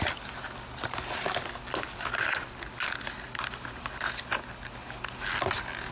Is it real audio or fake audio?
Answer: real